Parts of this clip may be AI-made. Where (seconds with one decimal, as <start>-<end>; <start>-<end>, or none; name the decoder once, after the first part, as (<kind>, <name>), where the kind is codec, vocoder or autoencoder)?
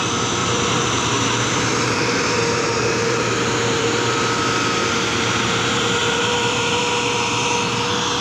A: 0.4-4.5 (vocoder, BigVGAN v2); 6.0-6.8